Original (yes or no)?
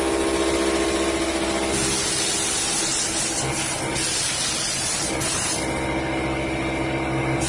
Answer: yes